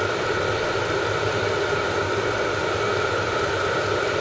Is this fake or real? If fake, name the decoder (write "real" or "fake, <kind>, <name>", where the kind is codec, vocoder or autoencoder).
real